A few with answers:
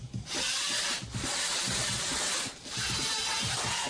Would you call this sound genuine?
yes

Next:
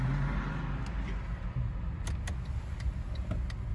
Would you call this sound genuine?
yes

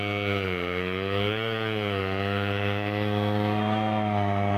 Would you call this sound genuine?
no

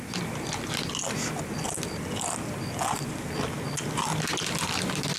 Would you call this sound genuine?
yes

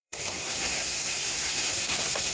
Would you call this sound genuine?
no